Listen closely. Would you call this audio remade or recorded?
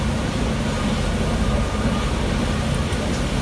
recorded